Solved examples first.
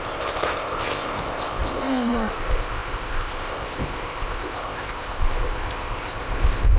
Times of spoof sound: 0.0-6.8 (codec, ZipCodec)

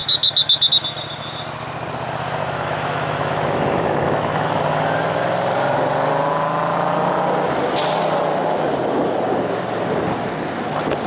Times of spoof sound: 0.0-0.7 (autoencoder, DAC-VAE); 2.4-4.6

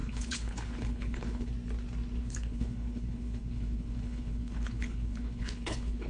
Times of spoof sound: 0.0-1.5 (codec, HILCodec); 2.2-6.1